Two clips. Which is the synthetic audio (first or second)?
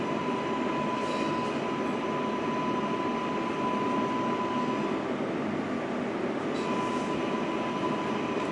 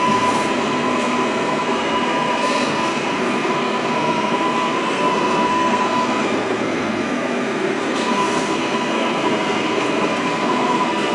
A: second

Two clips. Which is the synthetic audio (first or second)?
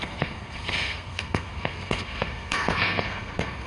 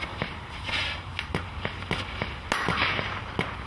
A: first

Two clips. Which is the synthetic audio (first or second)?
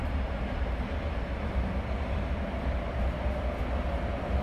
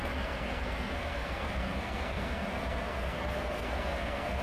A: second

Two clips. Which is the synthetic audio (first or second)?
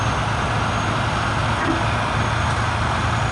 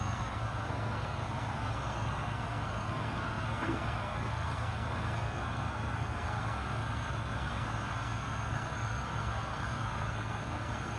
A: second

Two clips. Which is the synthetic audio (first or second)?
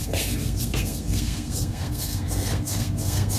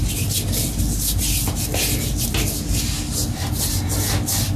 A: first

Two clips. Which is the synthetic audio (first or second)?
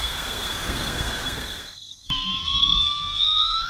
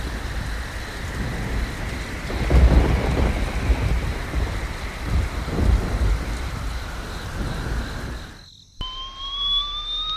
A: first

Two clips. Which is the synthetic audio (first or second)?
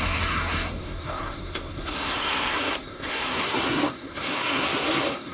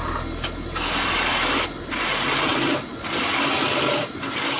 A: first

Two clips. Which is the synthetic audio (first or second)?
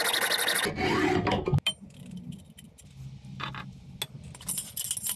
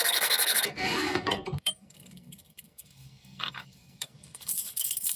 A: second